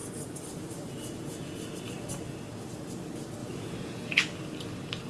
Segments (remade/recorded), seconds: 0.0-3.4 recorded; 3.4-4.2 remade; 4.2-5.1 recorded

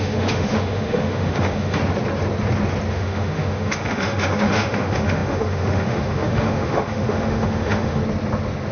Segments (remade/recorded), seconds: 0.0-1.8 remade; 1.8-2.9 recorded; 2.9-8.0 remade; 8.0-8.7 recorded

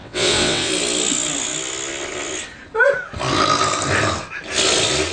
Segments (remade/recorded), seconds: 0.0-0.7 remade; 0.7-5.1 recorded

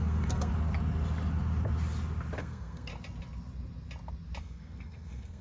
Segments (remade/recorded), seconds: 0.0-0.5 remade; 0.5-2.4 recorded; 2.4-2.9 remade; 2.9-4.4 recorded; 4.4-5.4 remade